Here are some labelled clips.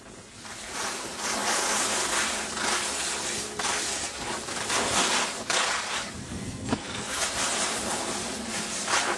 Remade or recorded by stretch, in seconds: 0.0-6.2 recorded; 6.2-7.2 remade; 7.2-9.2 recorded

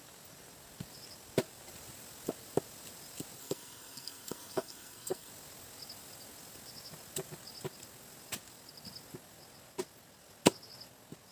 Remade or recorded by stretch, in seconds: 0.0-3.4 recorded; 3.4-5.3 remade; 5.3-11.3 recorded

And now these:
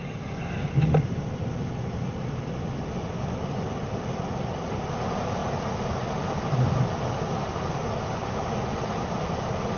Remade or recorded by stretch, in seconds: 0.0-9.8 recorded